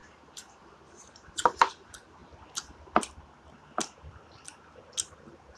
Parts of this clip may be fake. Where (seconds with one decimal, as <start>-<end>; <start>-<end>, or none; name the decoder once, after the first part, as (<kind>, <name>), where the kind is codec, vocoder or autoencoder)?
0.0-2.2 (vocoder, BigVGAN v2); 5.0-5.6